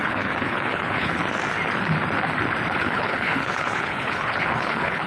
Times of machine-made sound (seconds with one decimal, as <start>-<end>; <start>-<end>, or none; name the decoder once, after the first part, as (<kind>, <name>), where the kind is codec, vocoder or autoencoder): 0.0-1.2 (codec, HILCodec); 2.8-5.1